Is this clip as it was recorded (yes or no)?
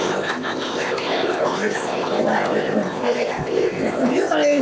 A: no